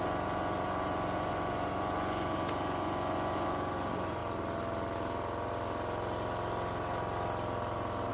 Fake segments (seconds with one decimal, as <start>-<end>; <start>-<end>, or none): 0.0-4.2